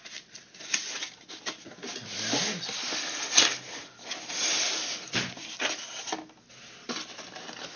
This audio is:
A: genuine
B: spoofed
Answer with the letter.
A